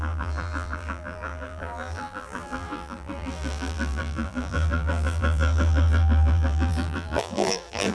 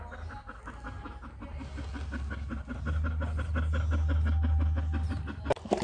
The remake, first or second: first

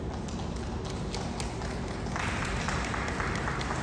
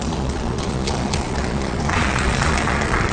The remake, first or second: second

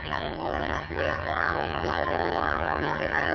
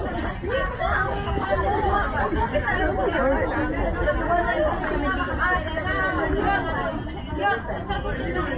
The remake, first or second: first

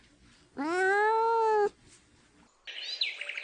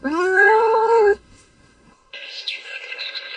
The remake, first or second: second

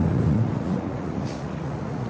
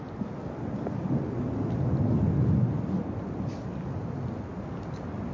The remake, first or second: first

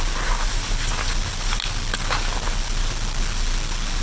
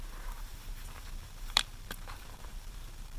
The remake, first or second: second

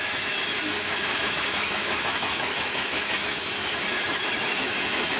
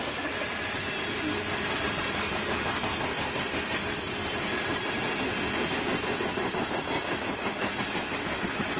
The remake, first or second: first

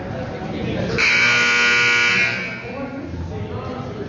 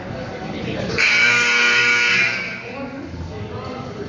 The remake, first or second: second